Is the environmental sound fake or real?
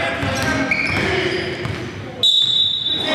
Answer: real